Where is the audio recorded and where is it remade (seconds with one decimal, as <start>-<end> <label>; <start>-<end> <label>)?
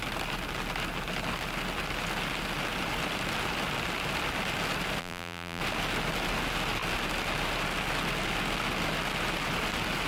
0.0-5.0 recorded; 5.0-5.6 remade; 5.6-10.1 recorded